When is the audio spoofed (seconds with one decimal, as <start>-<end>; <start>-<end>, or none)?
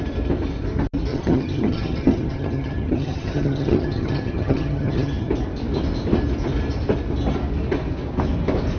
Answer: 1.1-5.3